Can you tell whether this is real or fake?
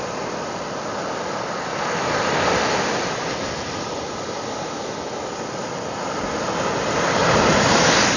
real